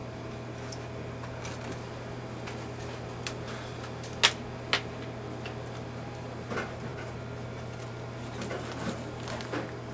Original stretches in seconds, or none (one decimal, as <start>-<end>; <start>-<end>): 0.0-9.9